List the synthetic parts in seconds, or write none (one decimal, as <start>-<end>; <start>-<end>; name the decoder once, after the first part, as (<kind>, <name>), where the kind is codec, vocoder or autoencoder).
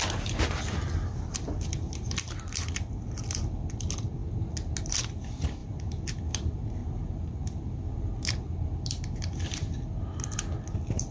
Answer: none